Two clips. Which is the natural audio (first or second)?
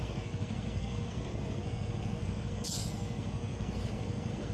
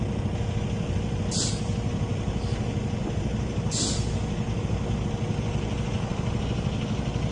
second